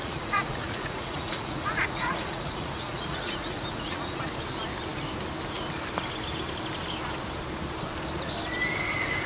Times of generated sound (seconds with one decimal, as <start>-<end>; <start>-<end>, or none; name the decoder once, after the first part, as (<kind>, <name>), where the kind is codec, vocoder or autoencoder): 0.0-4.2 (vocoder, Vocos)

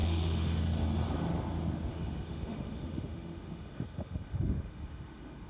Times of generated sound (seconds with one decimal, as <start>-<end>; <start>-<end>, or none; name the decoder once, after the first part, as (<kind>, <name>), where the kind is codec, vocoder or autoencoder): 0.0-0.6 (autoencoder, DAC-VAE); 1.9-5.5

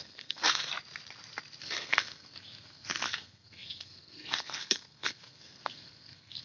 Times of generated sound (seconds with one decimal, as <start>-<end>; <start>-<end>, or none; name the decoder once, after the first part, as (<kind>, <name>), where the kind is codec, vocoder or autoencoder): 0.0-0.7 (codec, SNAC); 1.6-6.4

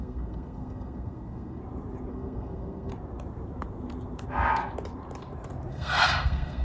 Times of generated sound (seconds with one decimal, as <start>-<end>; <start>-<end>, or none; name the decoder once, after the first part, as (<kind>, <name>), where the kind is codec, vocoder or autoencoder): 0.0-1.6 (codec, SNAC); 2.1-2.9; 5.7-6.6

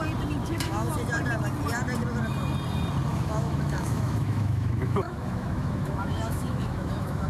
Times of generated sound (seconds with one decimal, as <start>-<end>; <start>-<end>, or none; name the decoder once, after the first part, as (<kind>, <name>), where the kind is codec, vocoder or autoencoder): 0.4-0.9 (autoencoder, DAC-VAE); 3.1-7.3

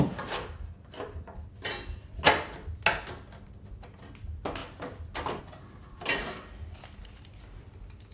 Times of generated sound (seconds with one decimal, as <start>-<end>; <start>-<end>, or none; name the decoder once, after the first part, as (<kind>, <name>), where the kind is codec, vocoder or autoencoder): none